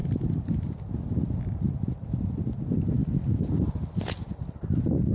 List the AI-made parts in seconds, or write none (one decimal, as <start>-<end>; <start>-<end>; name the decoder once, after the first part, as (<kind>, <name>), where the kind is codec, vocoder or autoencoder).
none